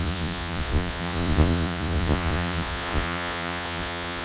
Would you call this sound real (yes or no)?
no